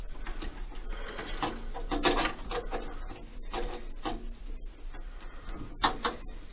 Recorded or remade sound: recorded